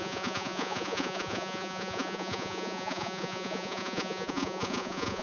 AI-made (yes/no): yes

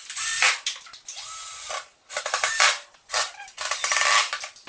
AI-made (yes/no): no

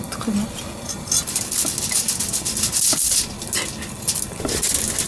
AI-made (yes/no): no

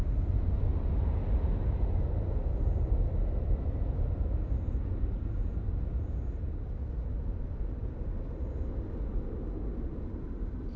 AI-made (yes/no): no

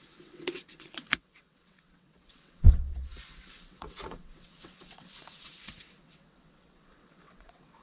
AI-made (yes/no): yes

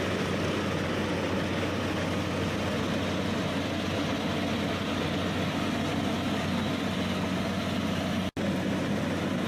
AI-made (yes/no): no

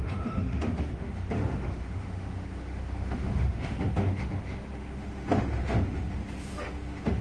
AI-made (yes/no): yes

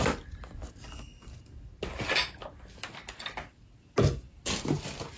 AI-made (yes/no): no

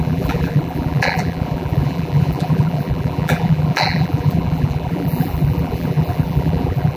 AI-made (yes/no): yes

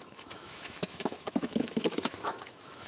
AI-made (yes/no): yes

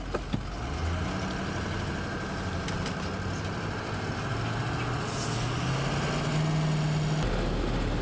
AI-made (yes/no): no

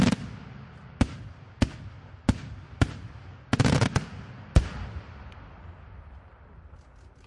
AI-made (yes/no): no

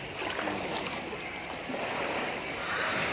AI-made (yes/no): no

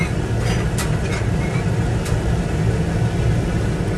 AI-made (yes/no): no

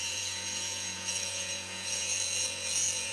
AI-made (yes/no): yes